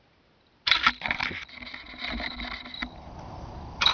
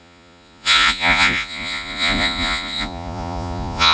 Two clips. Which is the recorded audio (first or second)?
first